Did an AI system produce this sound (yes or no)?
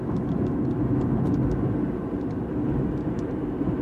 no